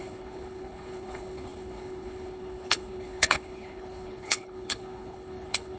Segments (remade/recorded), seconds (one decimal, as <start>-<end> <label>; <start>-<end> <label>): 0.0-5.8 remade